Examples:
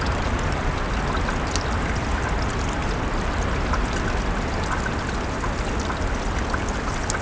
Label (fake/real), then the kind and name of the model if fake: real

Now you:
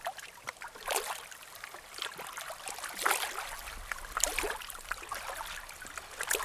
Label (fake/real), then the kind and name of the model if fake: real